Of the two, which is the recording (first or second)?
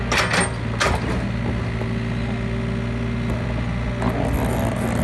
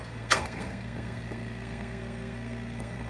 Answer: first